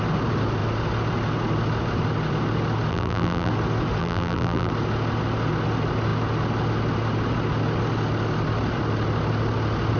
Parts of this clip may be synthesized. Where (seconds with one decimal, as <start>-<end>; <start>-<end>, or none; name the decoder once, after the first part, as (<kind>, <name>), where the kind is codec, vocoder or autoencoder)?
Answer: 2.9-3.5 (vocoder, BigVGAN v2); 4.0-4.7